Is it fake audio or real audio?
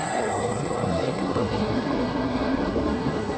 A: fake